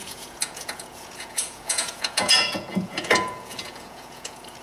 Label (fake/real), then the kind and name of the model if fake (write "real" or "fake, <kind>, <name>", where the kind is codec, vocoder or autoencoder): fake, vocoder, Vocos